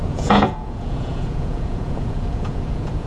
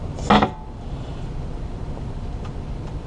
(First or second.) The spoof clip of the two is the first